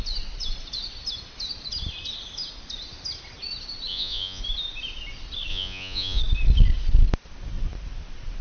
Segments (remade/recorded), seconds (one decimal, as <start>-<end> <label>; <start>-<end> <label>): 0.0-3.9 recorded; 3.9-4.4 remade; 4.4-5.5 recorded; 5.5-6.2 remade; 6.2-8.4 recorded